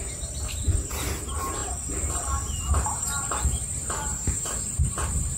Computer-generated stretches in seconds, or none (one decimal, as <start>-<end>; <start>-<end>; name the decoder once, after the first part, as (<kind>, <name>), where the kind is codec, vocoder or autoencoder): 0.0-5.4 (vocoder, BigVGAN v2)